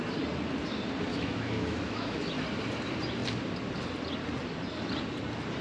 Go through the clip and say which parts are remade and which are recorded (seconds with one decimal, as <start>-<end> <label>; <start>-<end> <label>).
0.0-1.1 recorded; 1.1-2.3 remade; 2.3-5.6 recorded